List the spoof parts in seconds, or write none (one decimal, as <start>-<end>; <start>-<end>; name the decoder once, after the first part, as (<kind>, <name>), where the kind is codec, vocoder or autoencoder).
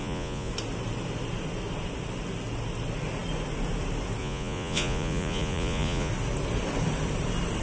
0.0-0.5 (vocoder, Vocos); 4.2-6.1